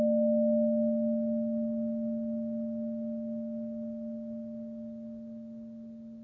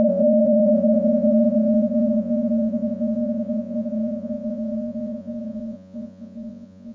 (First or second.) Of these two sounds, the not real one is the second